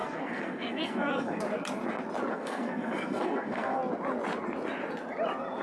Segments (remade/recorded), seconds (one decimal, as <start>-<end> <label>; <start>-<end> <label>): 0.0-1.4 remade; 1.4-2.3 recorded; 2.3-3.8 remade; 3.8-5.6 recorded